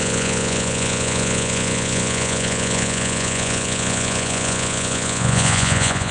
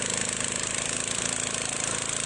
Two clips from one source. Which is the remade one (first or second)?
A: first